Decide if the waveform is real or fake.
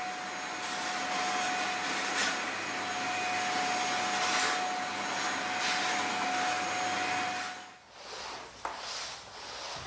real